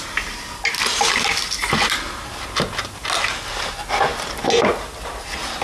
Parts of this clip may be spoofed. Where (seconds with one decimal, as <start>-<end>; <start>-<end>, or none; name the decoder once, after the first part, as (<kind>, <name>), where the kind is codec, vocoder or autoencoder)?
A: none